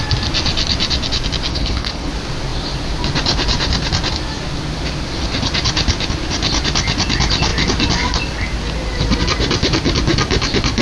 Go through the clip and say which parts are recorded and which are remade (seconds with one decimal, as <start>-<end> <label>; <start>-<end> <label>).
0.0-1.5 recorded; 1.5-2.1 remade; 2.1-10.8 recorded